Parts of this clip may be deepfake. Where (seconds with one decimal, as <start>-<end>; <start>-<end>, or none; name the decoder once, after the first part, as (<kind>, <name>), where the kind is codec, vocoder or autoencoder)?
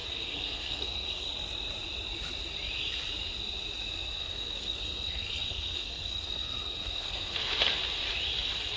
0.0-1.3 (codec, SNAC); 4.2-7.5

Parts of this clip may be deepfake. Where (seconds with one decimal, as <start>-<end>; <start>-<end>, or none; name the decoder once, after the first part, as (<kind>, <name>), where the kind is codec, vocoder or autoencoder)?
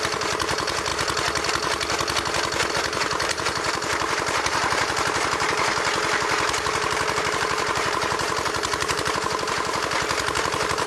0.0-0.9 (vocoder, BigVGAN v2); 2.7-5.7; 7.3-10.9